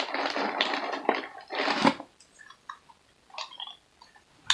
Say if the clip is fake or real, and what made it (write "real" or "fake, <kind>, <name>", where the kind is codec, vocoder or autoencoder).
real